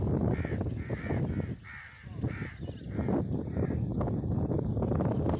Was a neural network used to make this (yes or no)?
no